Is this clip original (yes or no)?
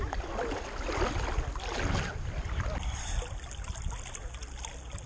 yes